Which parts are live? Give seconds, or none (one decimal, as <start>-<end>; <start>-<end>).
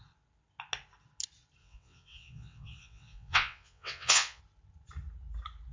0.0-1.6; 4.4-5.7